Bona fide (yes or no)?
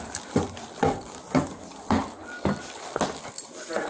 yes